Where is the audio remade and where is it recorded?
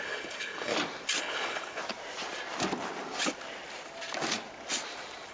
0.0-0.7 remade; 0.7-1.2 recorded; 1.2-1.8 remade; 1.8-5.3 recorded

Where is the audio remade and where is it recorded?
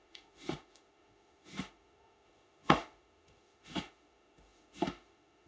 0.0-5.5 remade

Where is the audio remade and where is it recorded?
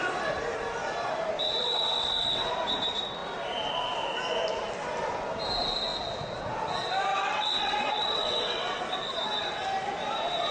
0.0-1.6 recorded; 1.6-2.5 remade; 2.5-7.1 recorded; 7.1-8.8 remade; 8.8-10.5 recorded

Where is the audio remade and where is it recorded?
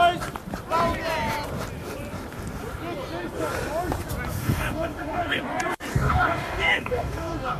0.0-4.4 recorded; 4.4-5.4 remade; 5.4-5.9 recorded; 5.9-7.6 remade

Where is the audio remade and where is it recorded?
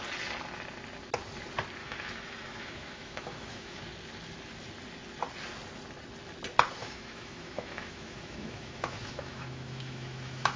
0.0-1.8 recorded; 1.8-3.8 remade; 3.8-6.8 recorded; 6.8-10.6 remade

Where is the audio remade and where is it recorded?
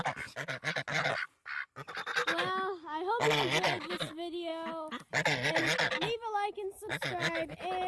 0.0-7.9 recorded